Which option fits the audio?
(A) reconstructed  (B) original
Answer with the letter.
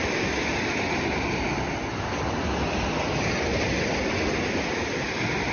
B